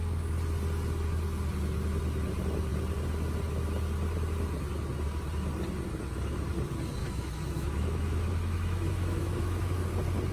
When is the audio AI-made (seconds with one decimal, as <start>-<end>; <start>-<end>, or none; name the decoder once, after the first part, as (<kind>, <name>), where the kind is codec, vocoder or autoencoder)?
7.0-9.9 (autoencoder, DAC-VAE)